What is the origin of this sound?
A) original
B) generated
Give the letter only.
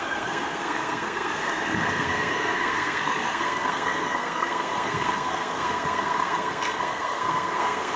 B